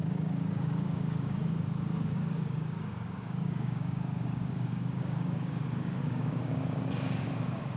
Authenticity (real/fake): fake